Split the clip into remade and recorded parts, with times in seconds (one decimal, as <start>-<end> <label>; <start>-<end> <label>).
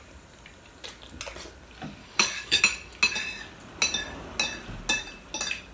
0.0-2.0 recorded; 2.0-2.6 remade; 2.6-5.7 recorded